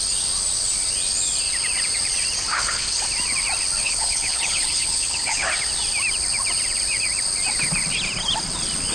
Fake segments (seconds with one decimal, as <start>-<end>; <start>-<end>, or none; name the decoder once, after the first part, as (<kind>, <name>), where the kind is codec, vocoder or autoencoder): 2.5-3.0 (codec, HILCodec); 3.8-5.5

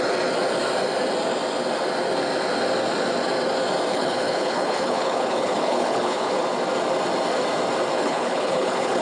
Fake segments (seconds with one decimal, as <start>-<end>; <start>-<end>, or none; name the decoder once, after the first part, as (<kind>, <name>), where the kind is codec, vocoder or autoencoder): 3.9-6.4 (codec, HILCodec); 7.9-9.0

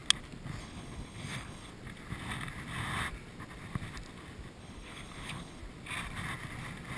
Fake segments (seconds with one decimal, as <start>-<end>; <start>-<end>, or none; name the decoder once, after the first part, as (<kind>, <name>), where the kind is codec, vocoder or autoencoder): 0.6-1.7 (codec, HILCodec); 4.6-5.6

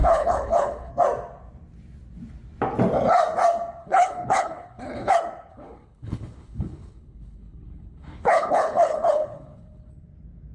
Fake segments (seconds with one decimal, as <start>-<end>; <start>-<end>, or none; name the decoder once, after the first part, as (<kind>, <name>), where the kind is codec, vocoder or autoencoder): 0.0-0.9 (codec, HILCodec); 3.8-5.1; 5.5-9.9